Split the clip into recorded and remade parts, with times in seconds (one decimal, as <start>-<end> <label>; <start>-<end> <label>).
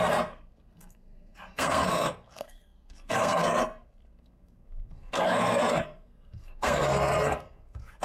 0.0-8.0 remade